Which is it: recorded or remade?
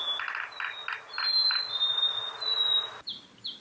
recorded